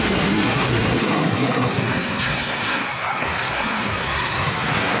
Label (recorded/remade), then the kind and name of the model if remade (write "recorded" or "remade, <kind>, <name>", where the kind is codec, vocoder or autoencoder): remade, codec, SNAC